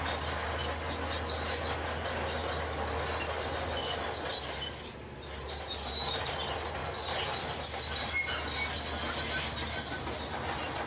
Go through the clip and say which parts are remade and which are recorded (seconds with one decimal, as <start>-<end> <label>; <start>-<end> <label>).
0.0-10.9 recorded